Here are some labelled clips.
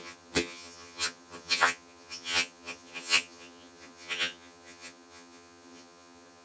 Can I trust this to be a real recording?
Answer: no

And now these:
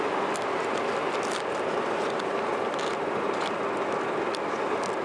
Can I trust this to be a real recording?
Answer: yes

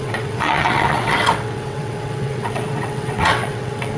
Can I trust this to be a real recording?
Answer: no